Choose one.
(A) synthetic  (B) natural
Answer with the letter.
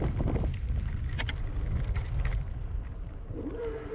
B